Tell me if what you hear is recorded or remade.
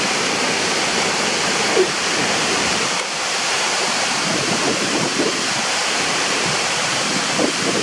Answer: remade